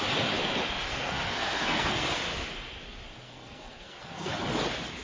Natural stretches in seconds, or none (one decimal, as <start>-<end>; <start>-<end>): 0.0-0.9; 2.2-3.2; 4.3-5.0